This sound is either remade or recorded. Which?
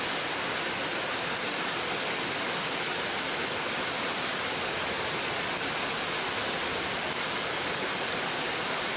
recorded